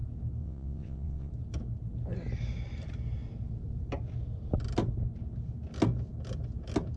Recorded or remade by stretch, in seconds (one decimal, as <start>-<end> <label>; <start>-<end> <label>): 0.0-0.4 recorded; 0.4-1.3 remade; 1.3-7.0 recorded